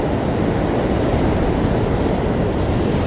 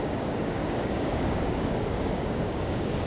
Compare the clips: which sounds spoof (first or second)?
second